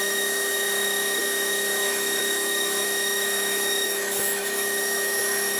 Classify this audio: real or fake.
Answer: fake